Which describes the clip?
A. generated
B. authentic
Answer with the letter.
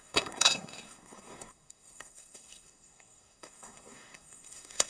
A